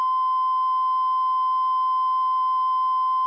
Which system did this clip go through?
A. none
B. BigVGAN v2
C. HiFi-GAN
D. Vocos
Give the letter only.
A